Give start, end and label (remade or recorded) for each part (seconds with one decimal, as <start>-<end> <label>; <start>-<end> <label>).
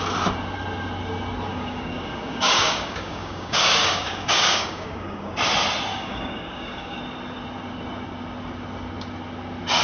0.0-1.5 recorded; 1.5-5.3 remade; 5.3-5.9 recorded; 5.9-7.0 remade; 7.0-9.8 recorded